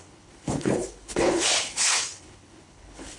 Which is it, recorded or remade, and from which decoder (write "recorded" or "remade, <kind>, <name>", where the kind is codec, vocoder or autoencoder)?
remade, codec, HILCodec